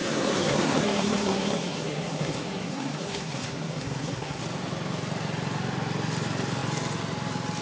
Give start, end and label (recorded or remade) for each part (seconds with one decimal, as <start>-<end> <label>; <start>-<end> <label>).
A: 0.0-4.4 remade; 4.4-7.6 recorded